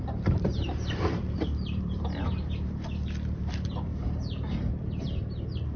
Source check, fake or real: fake